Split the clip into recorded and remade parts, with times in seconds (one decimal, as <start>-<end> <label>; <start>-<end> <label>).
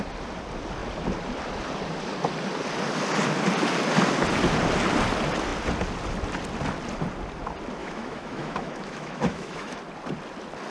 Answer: 0.0-7.8 recorded; 7.8-9.8 remade; 9.8-10.7 recorded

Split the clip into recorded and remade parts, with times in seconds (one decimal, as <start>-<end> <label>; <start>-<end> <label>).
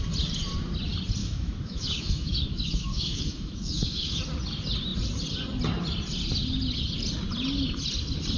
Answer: 0.0-1.2 recorded; 1.2-4.2 remade; 4.2-8.4 recorded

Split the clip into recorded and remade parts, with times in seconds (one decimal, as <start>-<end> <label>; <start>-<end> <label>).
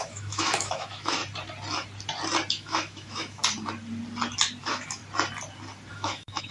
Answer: 0.0-1.2 remade; 1.2-2.5 recorded; 2.5-3.4 remade; 3.4-4.6 recorded; 4.6-5.0 remade; 5.0-5.9 recorded; 5.9-6.5 remade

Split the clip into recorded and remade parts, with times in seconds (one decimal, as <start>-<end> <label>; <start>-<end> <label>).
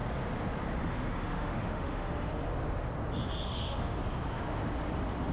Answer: 0.0-0.8 recorded; 0.8-2.5 remade; 2.5-3.4 recorded; 3.4-4.0 remade; 4.0-5.3 recorded